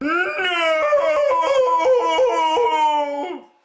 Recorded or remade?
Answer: recorded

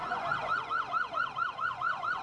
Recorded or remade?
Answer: remade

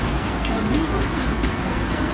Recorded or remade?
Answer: remade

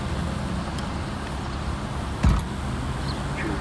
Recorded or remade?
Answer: recorded